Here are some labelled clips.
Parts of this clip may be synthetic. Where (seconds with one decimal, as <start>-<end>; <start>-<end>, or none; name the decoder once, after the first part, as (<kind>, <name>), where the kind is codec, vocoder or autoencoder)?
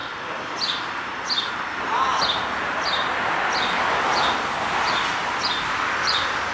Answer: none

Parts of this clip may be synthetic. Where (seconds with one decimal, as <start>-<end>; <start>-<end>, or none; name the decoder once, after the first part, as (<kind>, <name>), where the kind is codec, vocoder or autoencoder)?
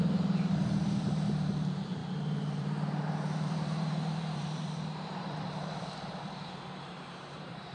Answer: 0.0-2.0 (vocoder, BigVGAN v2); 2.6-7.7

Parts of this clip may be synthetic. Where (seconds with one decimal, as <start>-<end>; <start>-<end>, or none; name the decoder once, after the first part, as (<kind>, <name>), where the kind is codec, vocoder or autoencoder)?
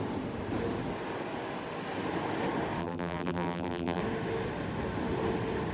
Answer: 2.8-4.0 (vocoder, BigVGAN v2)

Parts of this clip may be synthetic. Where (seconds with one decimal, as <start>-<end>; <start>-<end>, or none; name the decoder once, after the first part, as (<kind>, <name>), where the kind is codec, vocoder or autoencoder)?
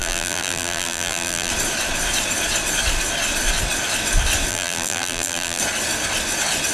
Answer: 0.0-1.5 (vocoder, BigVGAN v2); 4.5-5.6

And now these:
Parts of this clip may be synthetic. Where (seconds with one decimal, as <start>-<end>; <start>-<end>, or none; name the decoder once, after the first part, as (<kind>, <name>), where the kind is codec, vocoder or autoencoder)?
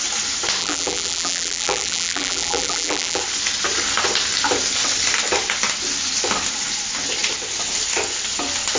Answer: 0.6-3.2 (vocoder, BigVGAN v2)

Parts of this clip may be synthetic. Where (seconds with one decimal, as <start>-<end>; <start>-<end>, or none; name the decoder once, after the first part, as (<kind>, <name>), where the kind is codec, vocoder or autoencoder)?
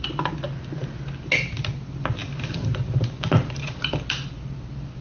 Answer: 2.2-3.9 (vocoder, BigVGAN v2)